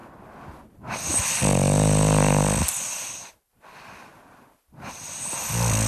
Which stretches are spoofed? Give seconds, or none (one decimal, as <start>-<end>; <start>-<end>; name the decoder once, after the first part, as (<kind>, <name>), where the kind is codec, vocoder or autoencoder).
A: none